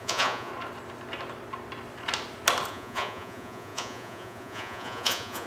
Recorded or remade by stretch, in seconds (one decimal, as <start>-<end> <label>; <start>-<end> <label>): 0.0-0.5 remade; 0.5-2.7 recorded; 2.7-5.5 remade

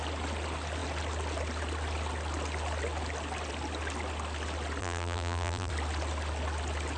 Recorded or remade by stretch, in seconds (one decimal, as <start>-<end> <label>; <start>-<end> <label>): 0.0-4.8 recorded; 4.8-5.7 remade; 5.7-7.0 recorded

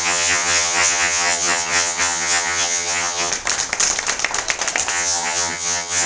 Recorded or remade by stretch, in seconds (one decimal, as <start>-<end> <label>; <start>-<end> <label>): 0.0-3.3 remade; 3.3-4.9 recorded; 4.9-6.1 remade

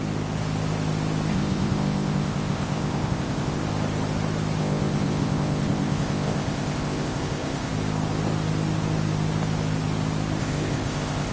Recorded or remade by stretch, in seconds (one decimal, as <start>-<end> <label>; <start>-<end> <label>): 0.0-1.3 recorded; 1.3-3.6 remade; 3.6-4.6 recorded; 4.6-7.7 remade; 7.7-10.4 recorded; 10.4-11.3 remade

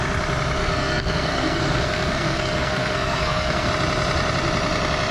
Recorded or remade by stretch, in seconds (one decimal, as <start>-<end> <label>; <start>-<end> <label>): 0.0-0.6 recorded; 0.6-3.7 remade; 3.7-5.1 recorded

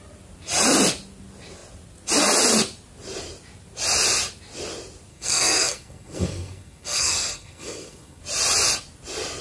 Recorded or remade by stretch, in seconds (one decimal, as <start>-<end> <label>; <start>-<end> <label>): 0.0-5.1 recorded; 5.1-8.2 remade; 8.2-9.4 recorded

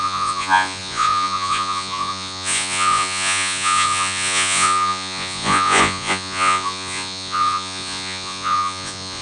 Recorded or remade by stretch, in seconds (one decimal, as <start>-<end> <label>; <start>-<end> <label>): 0.0-9.2 remade

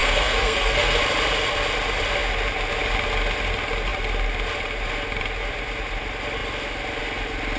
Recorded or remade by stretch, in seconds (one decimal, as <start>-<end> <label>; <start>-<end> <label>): 0.0-1.0 remade; 1.0-7.6 recorded